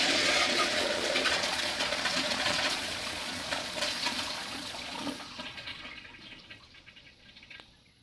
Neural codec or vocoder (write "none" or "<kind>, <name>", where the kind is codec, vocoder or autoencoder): vocoder, Vocos